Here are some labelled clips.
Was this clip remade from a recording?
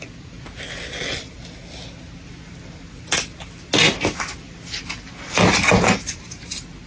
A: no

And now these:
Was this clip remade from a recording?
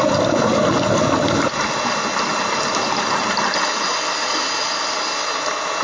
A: no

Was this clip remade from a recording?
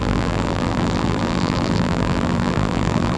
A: yes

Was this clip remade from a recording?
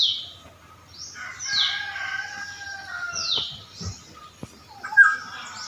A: no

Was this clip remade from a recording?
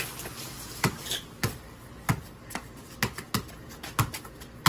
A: no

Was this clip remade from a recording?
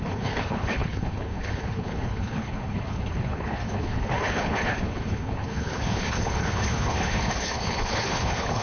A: yes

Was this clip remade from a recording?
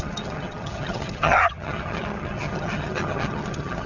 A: yes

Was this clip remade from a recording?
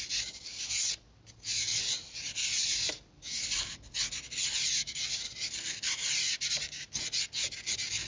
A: no